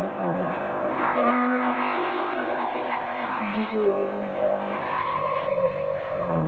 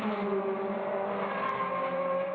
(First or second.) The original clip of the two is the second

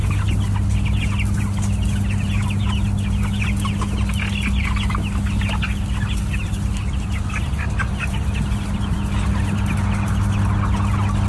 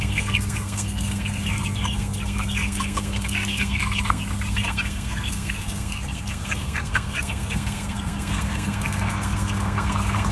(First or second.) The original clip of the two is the first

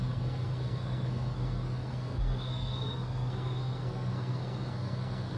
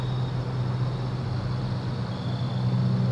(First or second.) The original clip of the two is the second